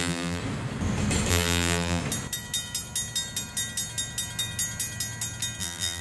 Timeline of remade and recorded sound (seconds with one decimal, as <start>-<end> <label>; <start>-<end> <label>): 0.0-0.4 remade; 0.4-1.3 recorded; 1.3-2.0 remade; 2.0-5.6 recorded; 5.6-6.0 remade